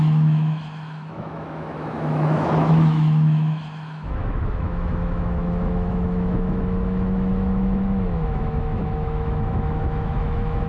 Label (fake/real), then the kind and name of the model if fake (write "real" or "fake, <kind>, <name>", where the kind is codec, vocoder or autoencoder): fake, autoencoder, DAC-VAE